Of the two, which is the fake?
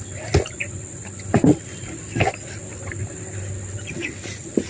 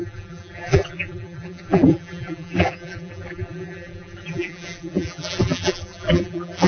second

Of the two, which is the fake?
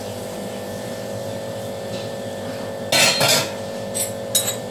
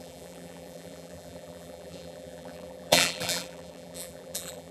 second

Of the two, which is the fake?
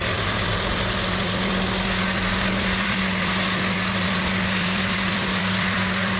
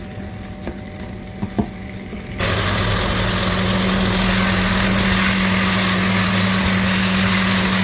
first